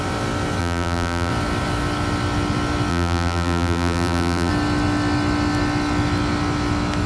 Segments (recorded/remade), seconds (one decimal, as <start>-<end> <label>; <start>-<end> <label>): 0.0-0.6 recorded; 0.6-1.3 remade; 1.3-2.9 recorded; 2.9-4.5 remade; 4.5-7.1 recorded